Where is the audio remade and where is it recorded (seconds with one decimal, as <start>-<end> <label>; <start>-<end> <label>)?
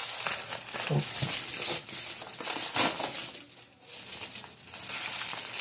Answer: 0.0-5.6 recorded